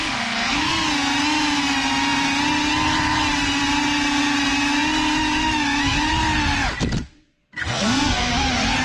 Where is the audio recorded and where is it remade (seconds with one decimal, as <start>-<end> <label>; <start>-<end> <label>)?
0.0-0.7 remade; 0.7-7.6 recorded; 7.6-8.3 remade; 8.3-8.8 recorded